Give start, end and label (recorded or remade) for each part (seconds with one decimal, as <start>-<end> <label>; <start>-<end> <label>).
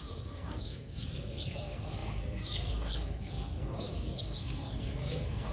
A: 0.0-5.5 remade